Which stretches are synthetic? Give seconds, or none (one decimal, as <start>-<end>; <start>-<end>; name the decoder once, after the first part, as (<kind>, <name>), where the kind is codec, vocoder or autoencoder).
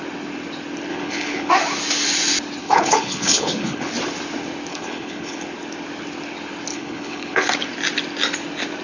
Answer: 0.9-1.5 (codec, HILCodec); 2.6-3.9; 4.7-5.4; 6.7-7.5